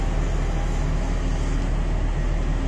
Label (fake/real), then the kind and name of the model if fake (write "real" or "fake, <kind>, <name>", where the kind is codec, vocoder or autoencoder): real